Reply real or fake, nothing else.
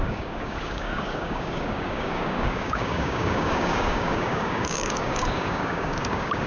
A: fake